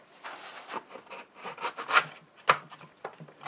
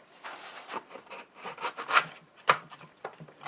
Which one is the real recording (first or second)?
first